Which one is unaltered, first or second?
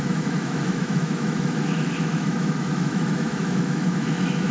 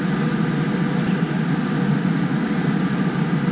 second